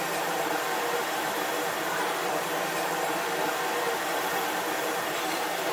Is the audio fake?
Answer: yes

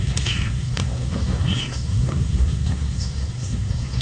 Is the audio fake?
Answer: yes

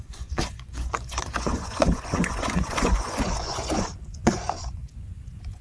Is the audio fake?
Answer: yes